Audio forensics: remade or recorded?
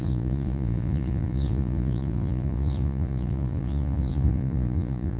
remade